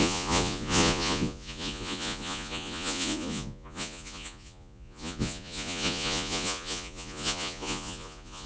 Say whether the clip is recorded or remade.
remade